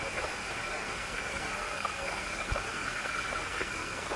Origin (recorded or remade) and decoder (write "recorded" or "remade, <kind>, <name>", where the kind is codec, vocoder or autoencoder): remade, codec, SNAC